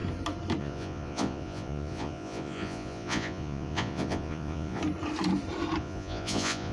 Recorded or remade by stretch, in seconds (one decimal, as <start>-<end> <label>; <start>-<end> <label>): 0.0-0.6 recorded; 0.6-4.8 remade; 4.8-5.8 recorded; 5.8-6.7 remade